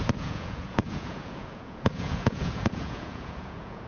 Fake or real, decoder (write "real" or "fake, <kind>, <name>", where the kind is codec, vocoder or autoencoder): fake, vocoder, Vocos